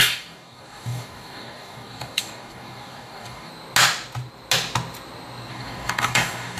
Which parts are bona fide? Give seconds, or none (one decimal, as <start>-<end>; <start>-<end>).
3.5-5.5